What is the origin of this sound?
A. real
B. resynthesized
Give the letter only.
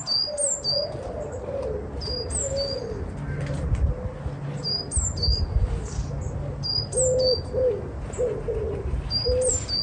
A